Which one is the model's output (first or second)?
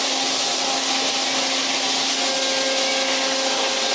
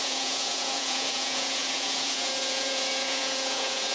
second